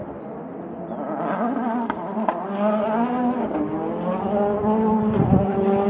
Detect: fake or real real